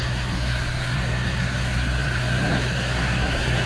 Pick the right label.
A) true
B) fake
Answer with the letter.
B